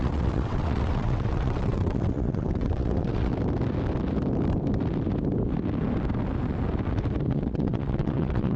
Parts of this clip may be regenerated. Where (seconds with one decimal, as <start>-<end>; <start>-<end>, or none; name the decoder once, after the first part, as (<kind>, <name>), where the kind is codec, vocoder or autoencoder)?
0.0-3.3 (vocoder, WaveNeXt); 7.3-8.6